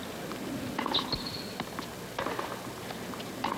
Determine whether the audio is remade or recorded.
recorded